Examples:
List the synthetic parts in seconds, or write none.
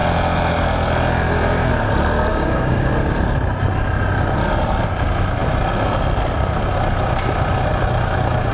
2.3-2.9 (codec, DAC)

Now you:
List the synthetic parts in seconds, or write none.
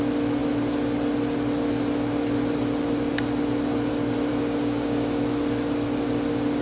4.3-5.2 (codec, DAC)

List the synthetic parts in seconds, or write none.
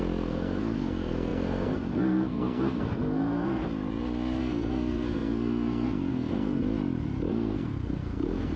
0.0-3.6 (codec, SNAC); 4.4-6.6; 7.3-8.6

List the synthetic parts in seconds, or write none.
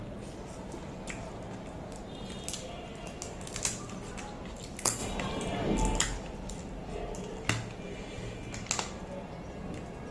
none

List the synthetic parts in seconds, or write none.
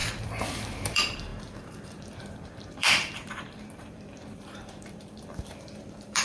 0.0-6.2 (vocoder, BigVGAN v2)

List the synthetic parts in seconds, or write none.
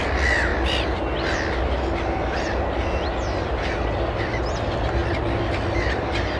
none